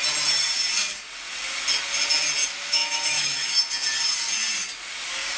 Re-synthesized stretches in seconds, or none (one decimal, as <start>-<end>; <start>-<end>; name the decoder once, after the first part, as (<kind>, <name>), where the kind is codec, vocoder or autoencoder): 2.4-3.6 (autoencoder, DAC-VAE)